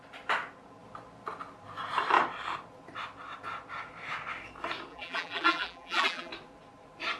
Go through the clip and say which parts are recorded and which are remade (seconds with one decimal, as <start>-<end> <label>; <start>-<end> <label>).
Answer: 0.0-4.9 recorded; 4.9-6.3 remade; 6.3-7.2 recorded